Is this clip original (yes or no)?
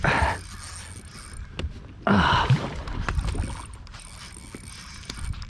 yes